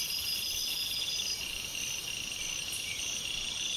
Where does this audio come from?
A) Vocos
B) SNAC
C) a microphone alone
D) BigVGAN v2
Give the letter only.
C